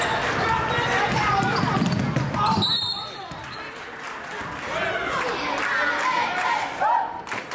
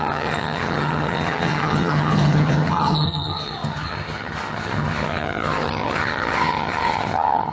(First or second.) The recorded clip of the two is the first